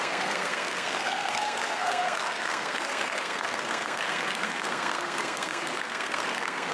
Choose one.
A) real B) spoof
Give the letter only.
B